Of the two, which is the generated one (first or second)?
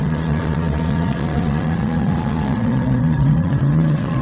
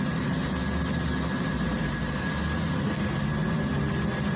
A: first